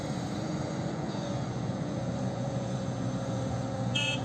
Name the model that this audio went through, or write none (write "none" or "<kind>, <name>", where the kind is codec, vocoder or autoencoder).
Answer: vocoder, Vocos